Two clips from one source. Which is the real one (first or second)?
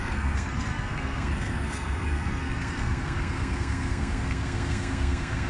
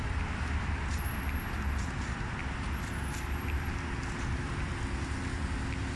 second